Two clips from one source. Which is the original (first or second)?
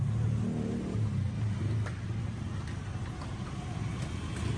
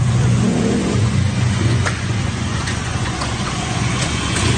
first